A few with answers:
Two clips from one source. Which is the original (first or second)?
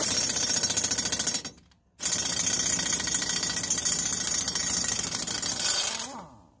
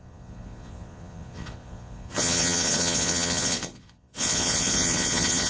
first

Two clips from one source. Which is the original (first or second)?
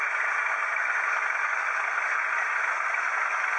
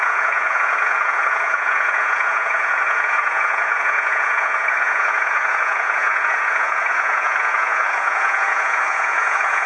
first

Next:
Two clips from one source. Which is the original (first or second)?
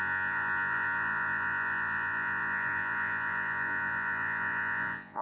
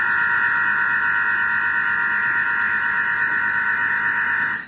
second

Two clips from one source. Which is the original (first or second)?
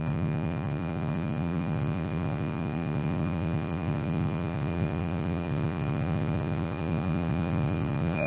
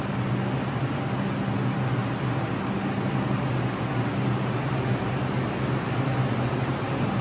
second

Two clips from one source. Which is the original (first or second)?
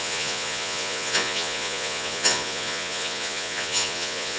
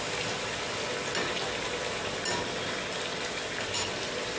second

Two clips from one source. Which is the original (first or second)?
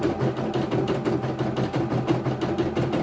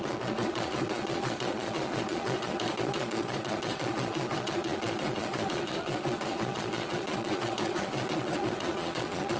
first